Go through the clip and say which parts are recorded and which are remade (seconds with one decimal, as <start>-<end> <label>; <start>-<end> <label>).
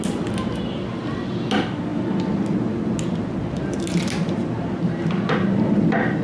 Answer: 0.0-6.2 recorded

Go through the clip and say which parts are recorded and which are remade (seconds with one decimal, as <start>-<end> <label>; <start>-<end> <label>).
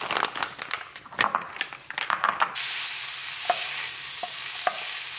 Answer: 0.0-5.2 recorded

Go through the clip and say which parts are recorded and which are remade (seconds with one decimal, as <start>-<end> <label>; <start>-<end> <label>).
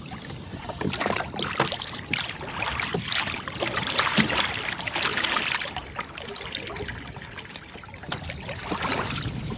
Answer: 0.0-9.6 remade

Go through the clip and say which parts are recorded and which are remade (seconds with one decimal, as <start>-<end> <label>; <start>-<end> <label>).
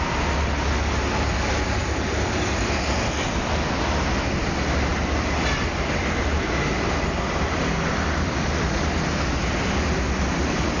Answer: 0.0-1.8 recorded; 1.8-2.5 remade; 2.5-4.9 recorded; 4.9-8.7 remade; 8.7-10.8 recorded